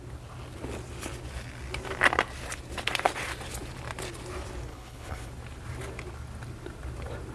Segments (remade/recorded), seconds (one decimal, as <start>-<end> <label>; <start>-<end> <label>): 0.0-4.7 recorded; 4.7-5.3 remade; 5.3-7.3 recorded